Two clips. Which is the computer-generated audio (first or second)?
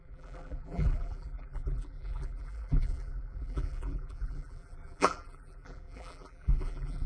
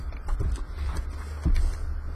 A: first